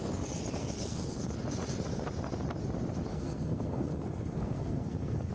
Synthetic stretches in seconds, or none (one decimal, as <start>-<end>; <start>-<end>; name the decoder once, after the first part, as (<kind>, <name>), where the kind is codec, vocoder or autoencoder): 0.6-1.2 (codec, SNAC); 3.1-5.3